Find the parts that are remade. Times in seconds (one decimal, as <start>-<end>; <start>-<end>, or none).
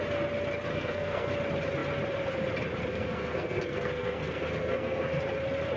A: 0.7-1.3; 2.9-5.2